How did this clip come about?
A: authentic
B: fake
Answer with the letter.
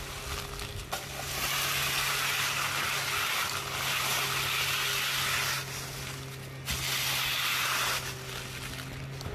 A